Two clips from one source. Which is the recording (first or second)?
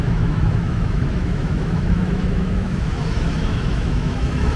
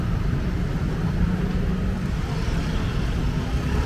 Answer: second